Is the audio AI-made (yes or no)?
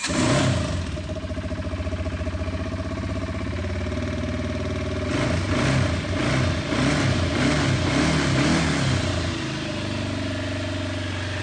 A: no